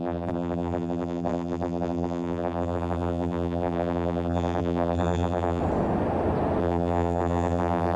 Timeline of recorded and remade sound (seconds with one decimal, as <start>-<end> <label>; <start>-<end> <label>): 0.0-5.6 remade; 5.6-6.6 recorded; 6.6-8.0 remade